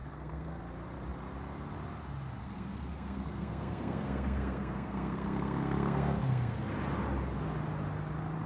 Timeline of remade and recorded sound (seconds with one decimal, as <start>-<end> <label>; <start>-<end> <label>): 0.0-0.6 remade; 0.6-2.4 recorded; 2.4-6.7 remade; 6.7-8.5 recorded